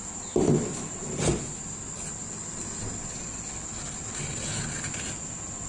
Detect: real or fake real